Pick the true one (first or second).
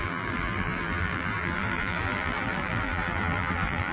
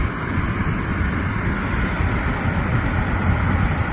second